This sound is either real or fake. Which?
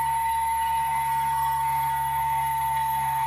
fake